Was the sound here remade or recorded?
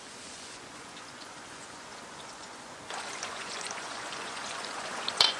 remade